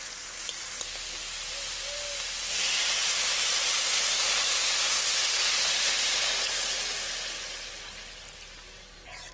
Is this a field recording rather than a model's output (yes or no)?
yes